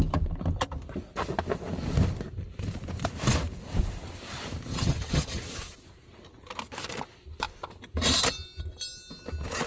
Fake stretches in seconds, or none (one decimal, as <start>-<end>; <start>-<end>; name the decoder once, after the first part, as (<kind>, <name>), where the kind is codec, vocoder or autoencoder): 4.7-5.4 (vocoder, HiFi-GAN)